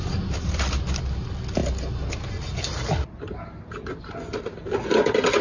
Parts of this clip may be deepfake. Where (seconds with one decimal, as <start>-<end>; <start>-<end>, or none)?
none